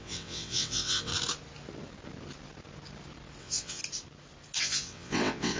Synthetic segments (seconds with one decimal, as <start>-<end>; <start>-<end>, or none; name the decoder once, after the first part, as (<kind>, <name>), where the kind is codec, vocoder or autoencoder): 0.0-1.1 (vocoder, WaveNeXt); 3.4-3.8; 4.6-5.6